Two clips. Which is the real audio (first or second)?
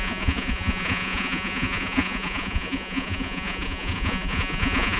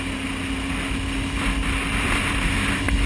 second